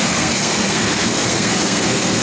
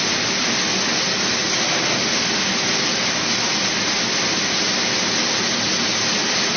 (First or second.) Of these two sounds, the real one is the second